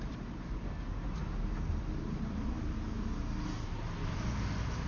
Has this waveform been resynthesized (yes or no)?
no